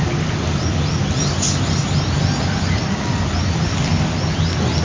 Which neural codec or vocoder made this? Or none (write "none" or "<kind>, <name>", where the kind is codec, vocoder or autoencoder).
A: none